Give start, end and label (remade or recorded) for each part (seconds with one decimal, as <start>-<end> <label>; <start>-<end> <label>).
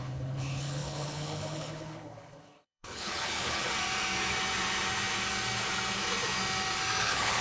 0.0-3.7 remade; 3.7-7.0 recorded; 7.0-7.4 remade